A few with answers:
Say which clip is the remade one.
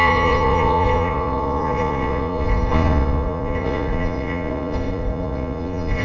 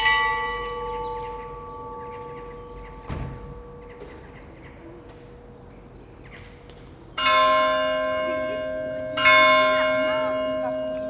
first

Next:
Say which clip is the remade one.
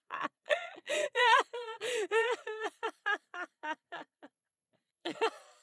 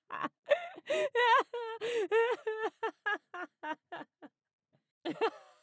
first